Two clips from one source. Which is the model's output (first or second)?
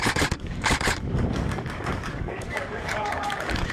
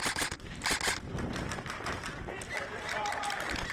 first